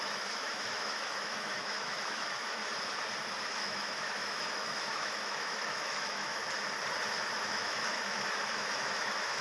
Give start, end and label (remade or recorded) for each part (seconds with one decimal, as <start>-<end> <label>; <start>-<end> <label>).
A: 0.0-2.6 remade; 2.6-3.4 recorded; 3.4-6.4 remade; 6.4-7.4 recorded; 7.4-9.4 remade